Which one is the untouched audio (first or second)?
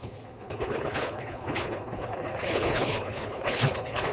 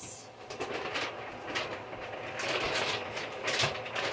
second